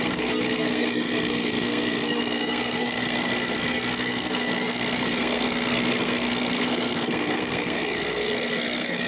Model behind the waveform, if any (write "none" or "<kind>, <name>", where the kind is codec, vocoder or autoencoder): codec, SNAC